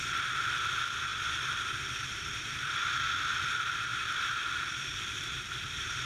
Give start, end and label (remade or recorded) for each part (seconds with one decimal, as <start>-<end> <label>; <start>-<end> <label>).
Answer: 0.0-6.1 remade